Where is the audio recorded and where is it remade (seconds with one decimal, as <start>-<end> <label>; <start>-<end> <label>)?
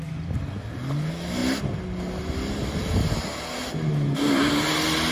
0.0-5.1 recorded